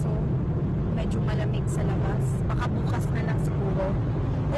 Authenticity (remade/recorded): recorded